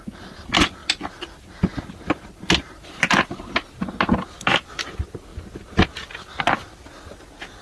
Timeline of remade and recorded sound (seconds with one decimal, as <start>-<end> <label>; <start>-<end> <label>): 0.0-7.6 recorded